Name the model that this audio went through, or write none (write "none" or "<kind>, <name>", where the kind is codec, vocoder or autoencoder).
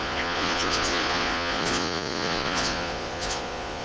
vocoder, Vocos